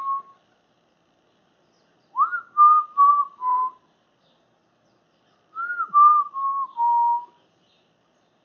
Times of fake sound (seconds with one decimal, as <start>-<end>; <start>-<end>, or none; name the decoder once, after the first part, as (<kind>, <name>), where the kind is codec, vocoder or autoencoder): 3.2-3.8 (vocoder, BigVGAN v2)